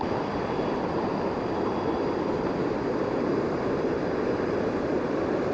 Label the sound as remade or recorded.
recorded